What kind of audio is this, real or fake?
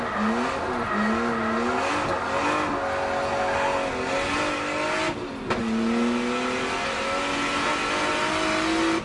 real